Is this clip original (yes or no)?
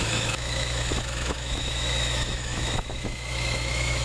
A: no